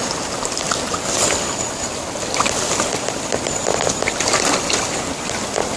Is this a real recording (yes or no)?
yes